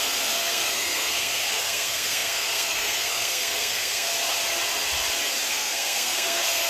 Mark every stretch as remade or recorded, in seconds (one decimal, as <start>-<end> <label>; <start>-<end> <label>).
0.0-4.1 remade; 4.1-5.5 recorded; 5.5-6.7 remade